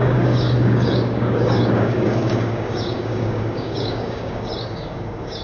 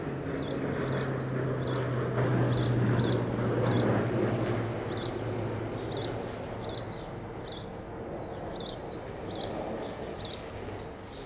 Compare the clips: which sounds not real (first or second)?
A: first